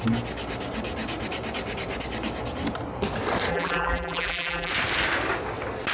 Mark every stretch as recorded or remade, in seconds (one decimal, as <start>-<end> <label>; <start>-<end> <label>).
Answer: 0.0-3.5 recorded; 3.5-4.7 remade; 4.7-5.9 recorded